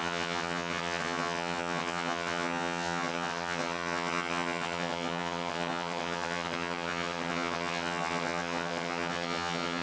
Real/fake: fake